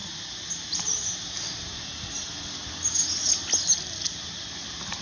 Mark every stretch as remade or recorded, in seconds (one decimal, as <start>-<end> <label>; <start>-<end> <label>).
0.0-5.0 recorded